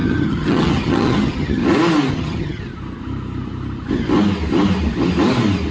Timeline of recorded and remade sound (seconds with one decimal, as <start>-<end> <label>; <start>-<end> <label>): 0.0-1.6 remade; 1.6-2.1 recorded; 2.1-2.6 remade; 2.6-5.7 recorded